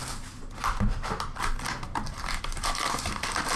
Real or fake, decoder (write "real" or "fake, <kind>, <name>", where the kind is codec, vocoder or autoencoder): real